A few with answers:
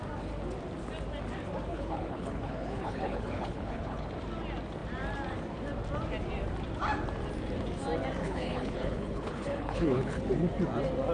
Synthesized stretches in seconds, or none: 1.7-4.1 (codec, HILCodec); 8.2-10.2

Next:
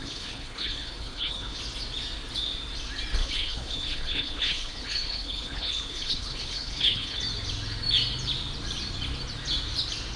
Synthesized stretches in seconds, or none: 0.0-1.6 (codec, HILCodec); 3.2-7.2